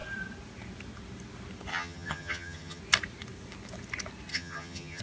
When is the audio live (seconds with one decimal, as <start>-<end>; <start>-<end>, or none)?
0.0-1.7; 2.8-4.3